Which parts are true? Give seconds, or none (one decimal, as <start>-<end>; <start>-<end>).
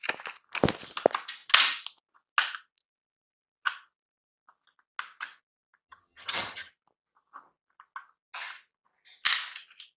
0.0-5.9; 6.7-10.0